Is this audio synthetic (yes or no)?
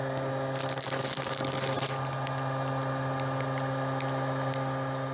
no